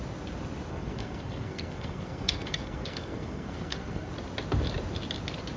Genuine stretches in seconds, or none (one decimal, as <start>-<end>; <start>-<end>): 0.0-0.7; 4.1-5.6